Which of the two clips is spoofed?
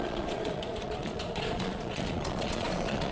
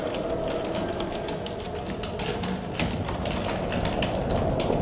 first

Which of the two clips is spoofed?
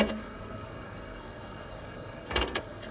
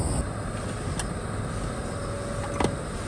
first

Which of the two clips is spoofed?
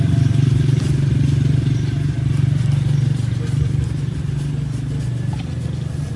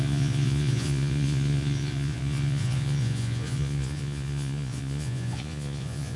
second